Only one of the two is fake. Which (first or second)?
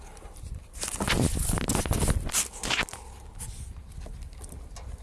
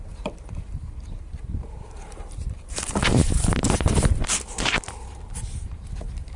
second